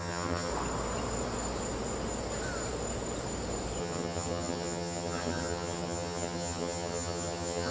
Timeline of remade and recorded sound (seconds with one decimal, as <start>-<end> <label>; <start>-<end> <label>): 0.0-0.5 remade; 0.5-3.8 recorded; 3.8-7.7 remade